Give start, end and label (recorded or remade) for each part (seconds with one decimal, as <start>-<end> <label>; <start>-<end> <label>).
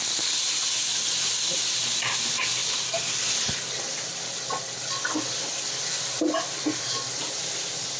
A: 0.0-0.9 remade; 0.9-1.5 recorded; 1.5-8.0 remade